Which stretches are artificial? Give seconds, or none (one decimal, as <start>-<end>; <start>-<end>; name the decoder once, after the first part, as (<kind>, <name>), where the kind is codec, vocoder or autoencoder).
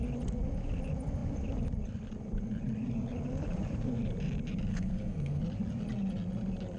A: 4.7-5.4 (codec, SNAC)